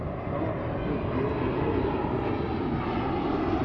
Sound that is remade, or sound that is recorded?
recorded